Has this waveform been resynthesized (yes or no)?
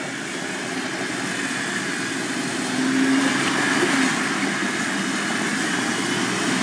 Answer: no